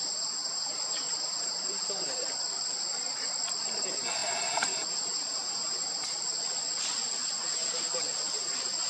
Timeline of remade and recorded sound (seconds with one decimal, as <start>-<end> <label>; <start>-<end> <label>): 0.0-0.4 recorded; 0.4-2.3 remade; 2.3-4.2 recorded; 4.2-6.2 remade; 6.2-8.9 recorded